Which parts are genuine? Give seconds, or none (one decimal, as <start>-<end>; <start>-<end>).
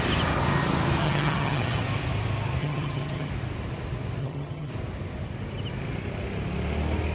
0.0-1.0; 1.8-2.6; 3.3-4.2; 4.7-7.1